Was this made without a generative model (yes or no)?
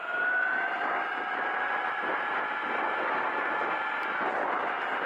yes